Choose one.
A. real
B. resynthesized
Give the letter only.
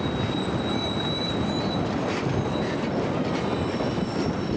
A